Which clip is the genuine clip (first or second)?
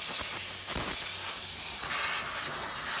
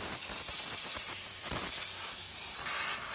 first